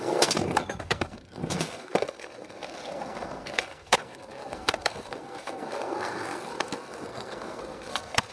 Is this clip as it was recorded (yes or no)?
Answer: no